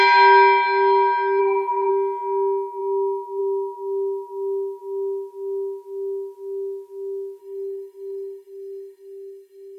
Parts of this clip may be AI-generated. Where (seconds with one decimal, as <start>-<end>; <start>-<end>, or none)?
1.4-1.9; 7.4-9.8